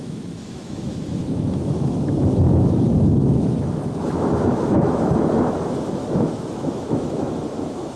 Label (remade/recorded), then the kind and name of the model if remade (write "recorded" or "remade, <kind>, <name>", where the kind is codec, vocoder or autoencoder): remade, autoencoder, DAC-VAE